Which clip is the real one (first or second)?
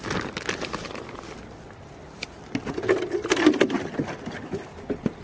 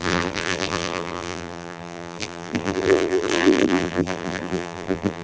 first